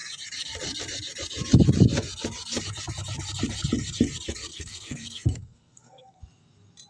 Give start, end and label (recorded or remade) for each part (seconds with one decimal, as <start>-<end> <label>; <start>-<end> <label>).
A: 0.0-4.5 recorded; 4.5-6.2 remade; 6.2-6.9 recorded